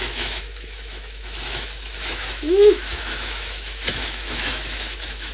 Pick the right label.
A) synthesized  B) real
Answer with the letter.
A